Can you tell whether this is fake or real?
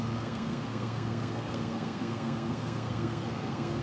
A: fake